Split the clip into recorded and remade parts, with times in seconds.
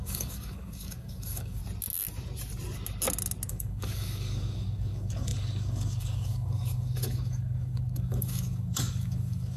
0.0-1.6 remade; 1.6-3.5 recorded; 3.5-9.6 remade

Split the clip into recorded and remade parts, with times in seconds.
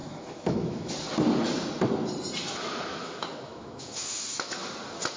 0.0-0.9 remade; 0.9-2.9 recorded; 2.9-4.7 remade; 4.7-5.2 recorded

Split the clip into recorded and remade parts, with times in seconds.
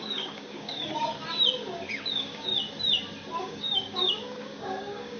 0.0-0.9 remade; 0.9-1.9 recorded; 1.9-2.5 remade; 2.5-3.4 recorded; 3.4-5.2 remade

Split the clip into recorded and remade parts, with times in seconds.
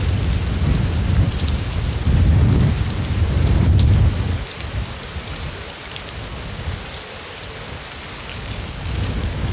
0.0-6.3 recorded; 6.3-6.8 remade; 6.8-8.3 recorded; 8.3-9.5 remade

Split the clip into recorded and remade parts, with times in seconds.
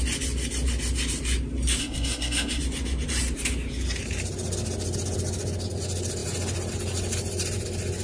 0.0-1.8 recorded; 1.8-2.6 remade; 2.6-8.0 recorded